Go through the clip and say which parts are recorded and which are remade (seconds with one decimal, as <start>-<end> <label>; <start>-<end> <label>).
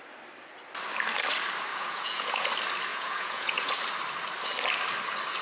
0.0-1.7 recorded; 1.7-2.5 remade; 2.5-2.9 recorded; 2.9-3.7 remade; 3.7-5.4 recorded